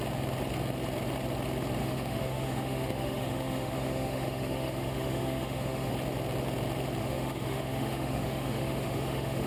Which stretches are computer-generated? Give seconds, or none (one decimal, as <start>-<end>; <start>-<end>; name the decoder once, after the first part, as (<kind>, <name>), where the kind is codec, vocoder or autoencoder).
1.8-5.9 (autoencoder, DAC-VAE); 7.0-9.5